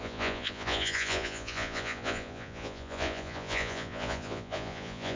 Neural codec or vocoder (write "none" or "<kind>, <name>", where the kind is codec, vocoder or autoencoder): vocoder, Vocos